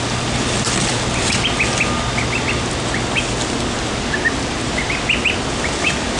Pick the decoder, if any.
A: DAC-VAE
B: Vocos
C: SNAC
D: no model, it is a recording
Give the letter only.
D